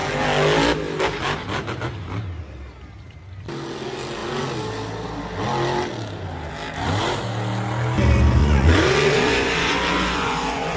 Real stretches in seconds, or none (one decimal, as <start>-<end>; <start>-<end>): 0.0-8.4